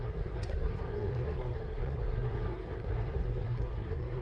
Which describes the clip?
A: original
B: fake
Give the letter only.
B